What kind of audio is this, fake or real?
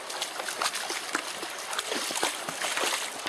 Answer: real